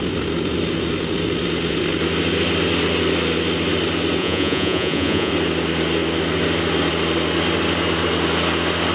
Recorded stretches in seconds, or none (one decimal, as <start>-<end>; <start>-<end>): 0.0-4.2; 5.3-8.9